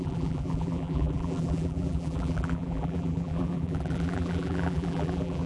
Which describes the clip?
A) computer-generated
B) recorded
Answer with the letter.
A